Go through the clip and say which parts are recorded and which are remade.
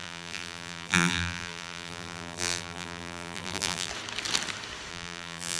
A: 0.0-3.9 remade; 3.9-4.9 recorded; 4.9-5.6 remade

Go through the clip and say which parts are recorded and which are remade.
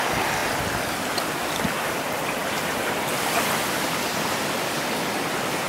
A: 0.0-5.7 recorded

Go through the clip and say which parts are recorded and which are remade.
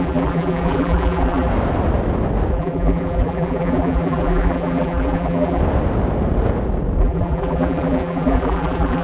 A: 0.0-1.5 remade; 1.5-2.5 recorded; 2.5-5.6 remade; 5.6-7.0 recorded; 7.0-9.0 remade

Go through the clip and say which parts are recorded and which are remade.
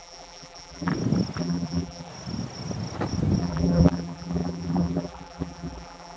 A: 0.0-0.9 remade; 0.9-1.4 recorded; 1.4-2.1 remade; 2.1-3.4 recorded; 3.4-6.2 remade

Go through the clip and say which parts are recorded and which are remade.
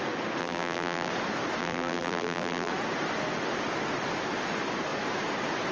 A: 0.0-0.4 recorded; 0.4-1.1 remade; 1.1-1.6 recorded; 1.6-2.7 remade; 2.7-5.7 recorded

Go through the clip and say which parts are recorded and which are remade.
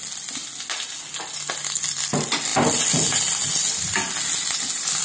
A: 0.0-5.0 recorded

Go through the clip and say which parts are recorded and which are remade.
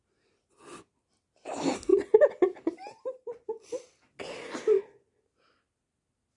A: 0.0-6.4 recorded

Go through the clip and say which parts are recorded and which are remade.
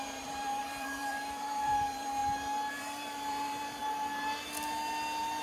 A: 0.0-2.2 remade; 2.2-2.7 recorded; 2.7-3.8 remade; 3.8-5.4 recorded